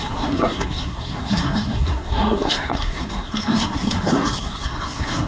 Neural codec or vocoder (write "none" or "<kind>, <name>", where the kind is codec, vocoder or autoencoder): codec, SNAC